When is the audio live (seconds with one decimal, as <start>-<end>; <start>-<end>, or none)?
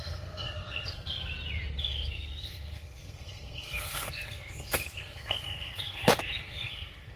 1.3-1.8